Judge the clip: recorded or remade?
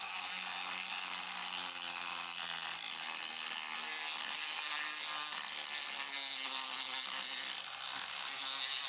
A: recorded